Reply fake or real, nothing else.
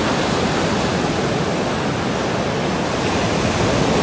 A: real